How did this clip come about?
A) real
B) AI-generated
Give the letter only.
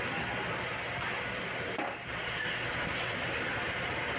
A